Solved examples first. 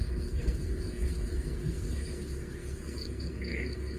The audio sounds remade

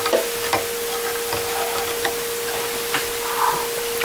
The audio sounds recorded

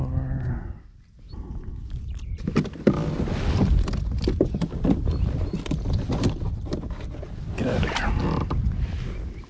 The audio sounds recorded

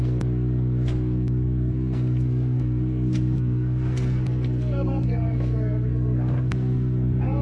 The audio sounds remade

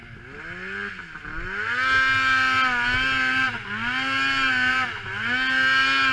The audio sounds recorded